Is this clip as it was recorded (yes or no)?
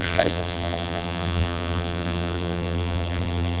no